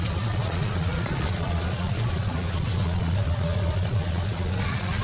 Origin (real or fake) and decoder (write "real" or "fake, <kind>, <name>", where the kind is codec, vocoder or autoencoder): fake, vocoder, Vocos